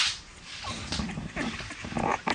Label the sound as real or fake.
real